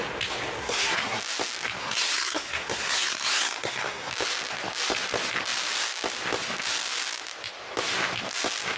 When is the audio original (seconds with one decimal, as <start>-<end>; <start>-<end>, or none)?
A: 0.0-0.6; 1.2-1.8; 4.1-8.8

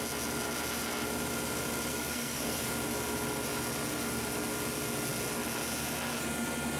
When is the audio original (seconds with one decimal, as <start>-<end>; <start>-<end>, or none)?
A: 0.0-1.9; 2.6-6.8